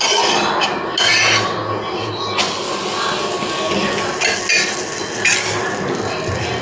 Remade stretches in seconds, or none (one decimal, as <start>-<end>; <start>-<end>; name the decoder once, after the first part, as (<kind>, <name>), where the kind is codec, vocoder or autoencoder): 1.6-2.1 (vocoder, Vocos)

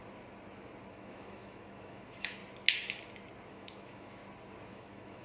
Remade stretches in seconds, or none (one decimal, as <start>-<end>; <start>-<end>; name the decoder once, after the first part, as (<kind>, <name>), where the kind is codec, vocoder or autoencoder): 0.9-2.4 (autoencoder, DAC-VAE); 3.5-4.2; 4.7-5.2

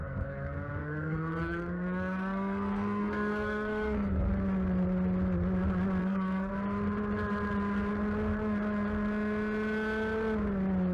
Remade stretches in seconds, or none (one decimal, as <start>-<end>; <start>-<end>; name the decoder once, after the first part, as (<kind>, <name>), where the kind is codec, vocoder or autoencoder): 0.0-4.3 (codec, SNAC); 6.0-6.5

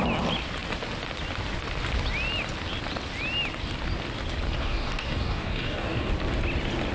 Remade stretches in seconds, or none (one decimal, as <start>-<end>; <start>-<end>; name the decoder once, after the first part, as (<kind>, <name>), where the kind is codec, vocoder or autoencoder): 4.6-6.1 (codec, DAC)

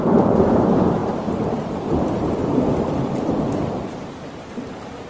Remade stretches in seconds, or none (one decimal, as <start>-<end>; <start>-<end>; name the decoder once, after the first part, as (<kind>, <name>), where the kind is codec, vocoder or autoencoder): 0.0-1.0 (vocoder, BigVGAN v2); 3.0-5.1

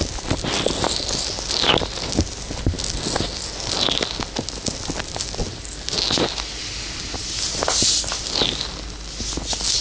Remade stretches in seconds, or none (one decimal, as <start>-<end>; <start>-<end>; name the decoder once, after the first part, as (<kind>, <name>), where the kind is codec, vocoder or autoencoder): none

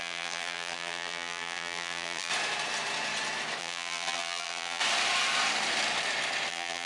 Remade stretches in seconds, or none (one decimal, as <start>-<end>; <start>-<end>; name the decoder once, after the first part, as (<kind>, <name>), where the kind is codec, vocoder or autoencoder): 0.0-2.3 (vocoder, BigVGAN v2); 3.6-4.8; 6.5-6.9

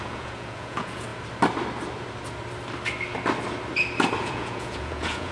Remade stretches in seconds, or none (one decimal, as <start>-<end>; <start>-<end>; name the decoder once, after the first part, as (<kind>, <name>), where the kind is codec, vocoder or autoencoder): 0.0-1.1 (vocoder, Vocos); 4.2-5.3